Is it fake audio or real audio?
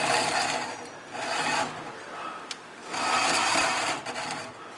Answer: real